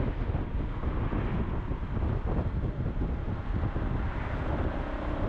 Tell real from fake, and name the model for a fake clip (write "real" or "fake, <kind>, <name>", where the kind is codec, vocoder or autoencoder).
real